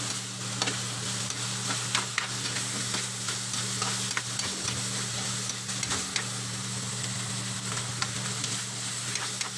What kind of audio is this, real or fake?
real